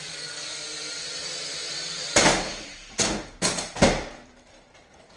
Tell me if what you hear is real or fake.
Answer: fake